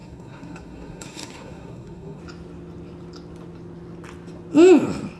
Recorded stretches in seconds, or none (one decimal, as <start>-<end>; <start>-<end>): 2.2-5.2